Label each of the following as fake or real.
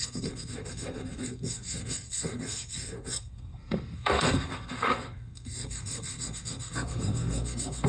fake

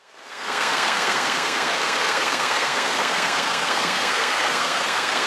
fake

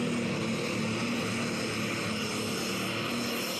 real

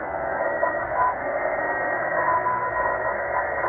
fake